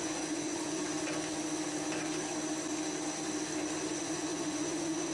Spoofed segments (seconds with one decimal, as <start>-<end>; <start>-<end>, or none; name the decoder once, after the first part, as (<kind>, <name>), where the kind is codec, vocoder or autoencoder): 0.0-0.8 (vocoder, Vocos); 3.9-5.1